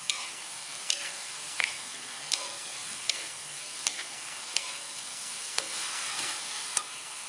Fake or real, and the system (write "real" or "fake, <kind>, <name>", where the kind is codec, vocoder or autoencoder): fake, codec, SNAC